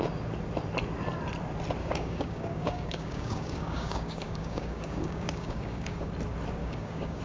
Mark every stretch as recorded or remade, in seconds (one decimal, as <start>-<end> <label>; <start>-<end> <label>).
0.0-1.8 recorded; 1.8-6.1 remade; 6.1-6.6 recorded; 6.6-7.2 remade